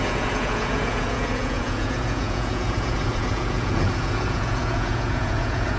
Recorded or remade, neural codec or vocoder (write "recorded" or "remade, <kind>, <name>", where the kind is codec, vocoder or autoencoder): remade, vocoder, Vocos